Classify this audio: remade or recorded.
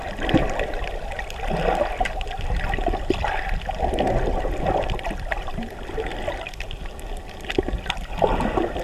recorded